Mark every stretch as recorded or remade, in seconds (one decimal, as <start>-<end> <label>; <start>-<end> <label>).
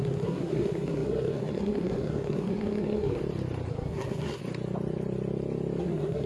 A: 0.0-3.2 remade; 3.2-3.7 recorded; 3.7-4.4 remade; 4.4-5.8 recorded; 5.8-6.3 remade